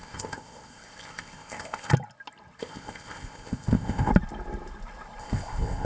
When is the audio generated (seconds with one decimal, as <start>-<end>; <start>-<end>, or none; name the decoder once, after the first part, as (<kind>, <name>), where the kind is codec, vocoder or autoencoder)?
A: 0.0-1.9 (codec, ZipCodec); 2.6-4.1; 5.2-5.8